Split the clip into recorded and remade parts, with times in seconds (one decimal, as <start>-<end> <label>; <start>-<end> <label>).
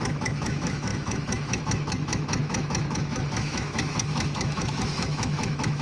0.0-5.8 remade